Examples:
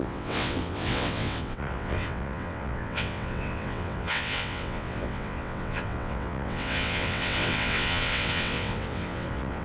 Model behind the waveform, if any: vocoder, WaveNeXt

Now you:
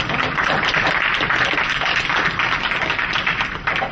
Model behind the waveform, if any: none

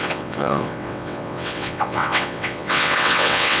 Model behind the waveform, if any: vocoder, WaveNeXt